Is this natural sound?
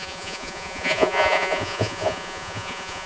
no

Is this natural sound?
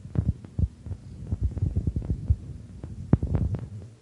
yes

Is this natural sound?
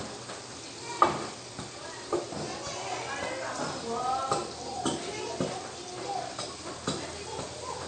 yes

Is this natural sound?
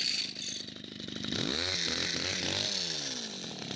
yes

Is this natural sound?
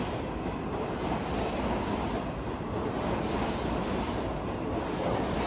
yes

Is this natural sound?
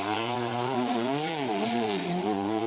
no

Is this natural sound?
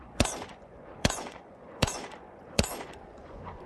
no